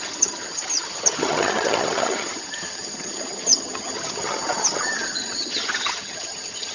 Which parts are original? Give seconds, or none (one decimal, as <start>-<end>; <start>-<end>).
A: none